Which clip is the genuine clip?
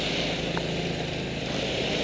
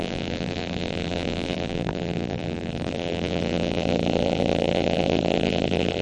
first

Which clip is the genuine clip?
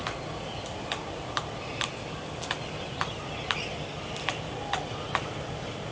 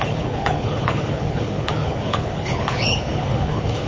first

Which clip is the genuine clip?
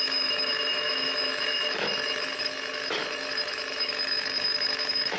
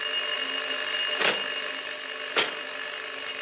second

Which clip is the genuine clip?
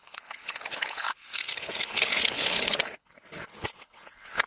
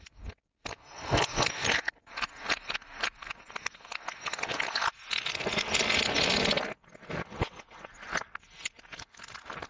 second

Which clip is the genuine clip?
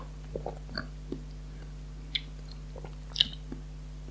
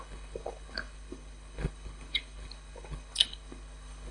first